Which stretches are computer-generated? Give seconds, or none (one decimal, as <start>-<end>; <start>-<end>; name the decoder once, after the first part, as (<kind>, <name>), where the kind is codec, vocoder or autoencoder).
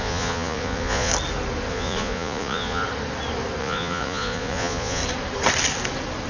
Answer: 0.0-1.1 (vocoder, Vocos); 1.7-2.8; 3.6-5.0